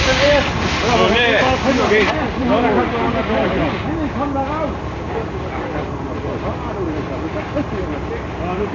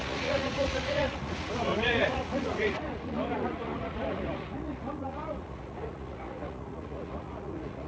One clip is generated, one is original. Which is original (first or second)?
first